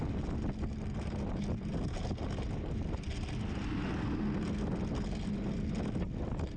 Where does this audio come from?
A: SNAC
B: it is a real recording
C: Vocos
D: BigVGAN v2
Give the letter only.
B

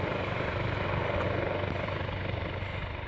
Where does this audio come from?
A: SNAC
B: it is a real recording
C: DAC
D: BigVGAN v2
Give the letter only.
D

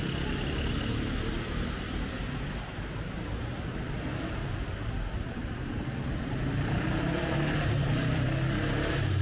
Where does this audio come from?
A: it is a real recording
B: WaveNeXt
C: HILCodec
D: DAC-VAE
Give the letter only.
A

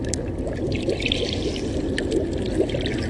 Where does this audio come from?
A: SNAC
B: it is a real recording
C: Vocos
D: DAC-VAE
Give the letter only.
B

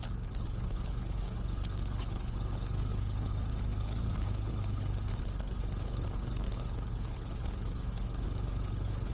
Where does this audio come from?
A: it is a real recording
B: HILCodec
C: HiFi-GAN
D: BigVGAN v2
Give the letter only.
B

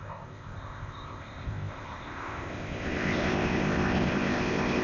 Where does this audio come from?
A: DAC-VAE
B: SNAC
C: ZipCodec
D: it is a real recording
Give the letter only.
C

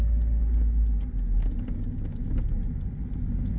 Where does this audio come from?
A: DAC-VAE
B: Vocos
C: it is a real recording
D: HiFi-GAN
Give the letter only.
C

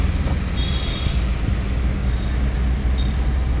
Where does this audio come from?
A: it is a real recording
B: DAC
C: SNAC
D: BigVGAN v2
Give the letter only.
A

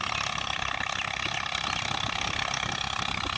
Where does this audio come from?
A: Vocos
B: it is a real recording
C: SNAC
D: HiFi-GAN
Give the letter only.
B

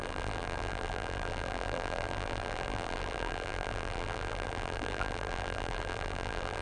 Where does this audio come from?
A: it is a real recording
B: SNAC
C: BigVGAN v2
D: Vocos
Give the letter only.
C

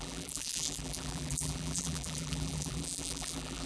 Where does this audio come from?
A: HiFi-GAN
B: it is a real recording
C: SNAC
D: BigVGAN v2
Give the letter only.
D